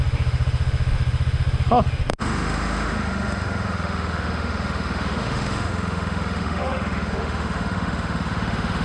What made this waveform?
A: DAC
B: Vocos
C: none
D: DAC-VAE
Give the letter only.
D